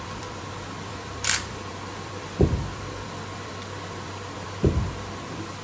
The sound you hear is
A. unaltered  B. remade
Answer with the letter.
B